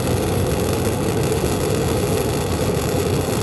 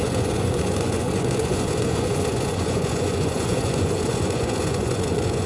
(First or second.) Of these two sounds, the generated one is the second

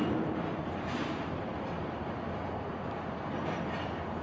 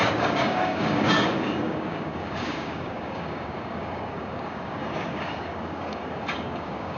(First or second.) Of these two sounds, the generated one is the second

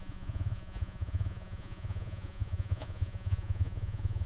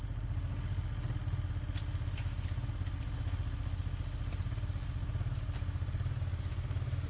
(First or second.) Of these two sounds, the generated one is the first